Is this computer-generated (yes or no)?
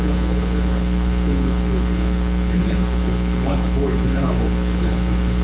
yes